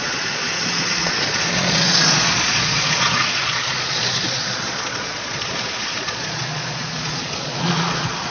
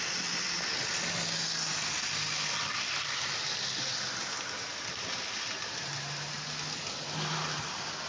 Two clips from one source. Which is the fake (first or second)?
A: first